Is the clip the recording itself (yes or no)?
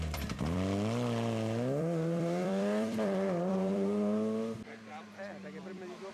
no